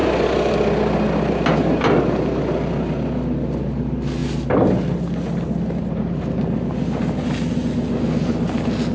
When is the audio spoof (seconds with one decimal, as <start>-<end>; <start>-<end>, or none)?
none